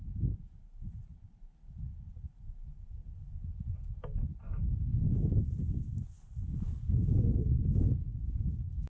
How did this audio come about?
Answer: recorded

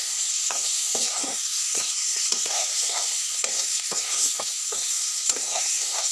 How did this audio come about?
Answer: remade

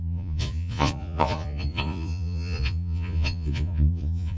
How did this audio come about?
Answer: remade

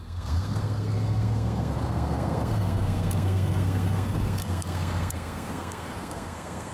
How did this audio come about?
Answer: remade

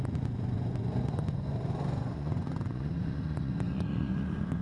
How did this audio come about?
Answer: remade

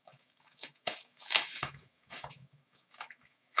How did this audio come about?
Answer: remade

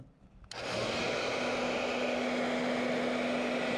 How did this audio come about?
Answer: recorded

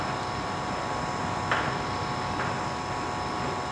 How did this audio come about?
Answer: recorded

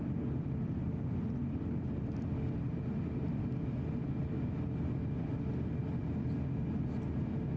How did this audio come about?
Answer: recorded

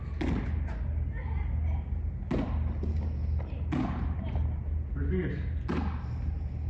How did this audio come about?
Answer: recorded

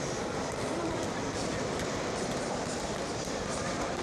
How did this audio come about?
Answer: recorded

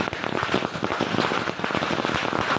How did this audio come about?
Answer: recorded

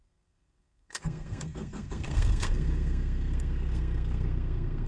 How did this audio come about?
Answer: remade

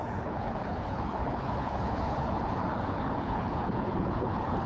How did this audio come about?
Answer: remade